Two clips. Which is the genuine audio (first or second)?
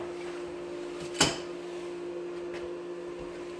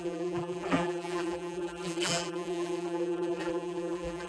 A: first